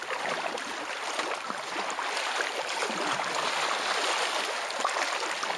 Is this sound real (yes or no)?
yes